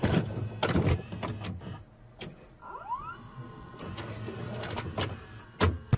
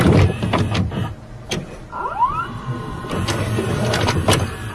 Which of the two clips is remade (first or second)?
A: second